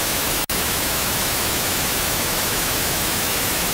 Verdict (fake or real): fake